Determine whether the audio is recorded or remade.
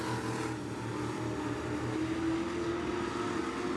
recorded